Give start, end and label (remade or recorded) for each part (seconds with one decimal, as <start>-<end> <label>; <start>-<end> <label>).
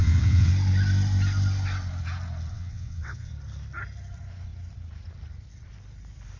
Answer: 0.0-0.5 remade; 0.5-2.5 recorded; 2.5-3.3 remade; 3.3-6.4 recorded